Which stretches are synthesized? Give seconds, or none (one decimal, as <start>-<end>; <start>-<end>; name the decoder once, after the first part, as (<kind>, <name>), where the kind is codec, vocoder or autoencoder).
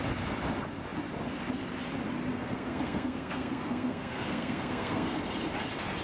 2.3-5.2 (codec, SNAC)